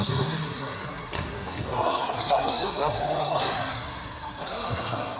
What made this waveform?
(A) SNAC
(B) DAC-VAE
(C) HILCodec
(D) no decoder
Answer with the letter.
A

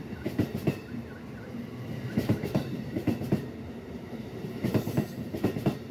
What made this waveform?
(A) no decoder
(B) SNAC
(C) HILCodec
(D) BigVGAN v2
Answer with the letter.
D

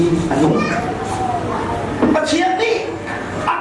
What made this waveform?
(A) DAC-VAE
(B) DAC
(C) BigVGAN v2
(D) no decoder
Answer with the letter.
D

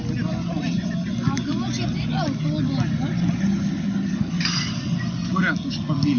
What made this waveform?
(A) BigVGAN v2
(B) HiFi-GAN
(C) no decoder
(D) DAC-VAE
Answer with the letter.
C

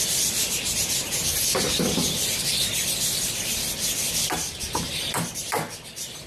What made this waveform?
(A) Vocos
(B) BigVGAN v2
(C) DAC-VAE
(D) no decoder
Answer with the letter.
B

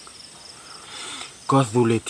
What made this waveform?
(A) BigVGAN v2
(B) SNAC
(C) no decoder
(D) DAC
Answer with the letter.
C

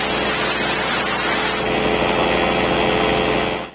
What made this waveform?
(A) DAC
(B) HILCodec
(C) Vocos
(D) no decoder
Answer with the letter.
D